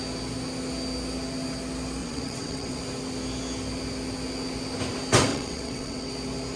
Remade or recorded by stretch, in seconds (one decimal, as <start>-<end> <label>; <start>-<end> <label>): 0.0-2.0 recorded; 2.0-2.8 remade; 2.8-5.3 recorded; 5.3-6.1 remade; 6.1-6.6 recorded